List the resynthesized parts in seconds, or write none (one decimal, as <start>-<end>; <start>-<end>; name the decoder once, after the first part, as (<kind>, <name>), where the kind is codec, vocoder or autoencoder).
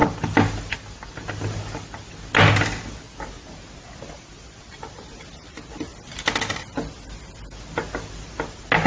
0.0-2.1 (vocoder, BigVGAN v2)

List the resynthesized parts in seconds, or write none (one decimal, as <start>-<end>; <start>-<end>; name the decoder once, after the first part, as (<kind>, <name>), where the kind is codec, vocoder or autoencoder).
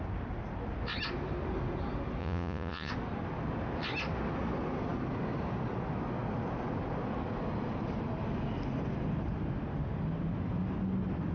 2.2-2.9 (vocoder, Vocos)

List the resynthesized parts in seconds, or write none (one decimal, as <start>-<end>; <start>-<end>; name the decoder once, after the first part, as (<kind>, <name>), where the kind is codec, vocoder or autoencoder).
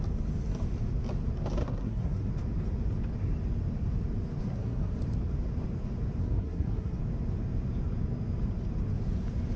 1.6-2.3 (codec, SNAC); 4.4-5.0; 6.2-7.0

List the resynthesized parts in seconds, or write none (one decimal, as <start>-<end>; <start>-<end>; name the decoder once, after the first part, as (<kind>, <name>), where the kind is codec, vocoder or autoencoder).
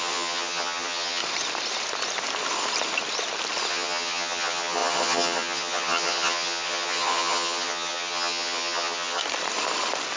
0.0-1.2 (vocoder, HiFi-GAN); 3.7-9.2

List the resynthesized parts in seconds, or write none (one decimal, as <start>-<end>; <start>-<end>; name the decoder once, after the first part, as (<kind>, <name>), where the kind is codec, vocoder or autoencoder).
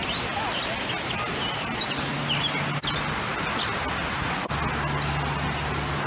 none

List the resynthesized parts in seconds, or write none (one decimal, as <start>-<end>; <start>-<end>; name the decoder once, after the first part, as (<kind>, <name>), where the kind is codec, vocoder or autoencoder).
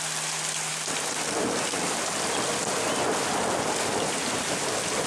none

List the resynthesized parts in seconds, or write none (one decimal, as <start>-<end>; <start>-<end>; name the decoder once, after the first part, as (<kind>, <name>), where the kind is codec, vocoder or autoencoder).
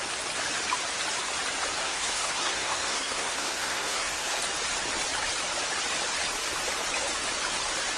1.8-4.4 (codec, SNAC)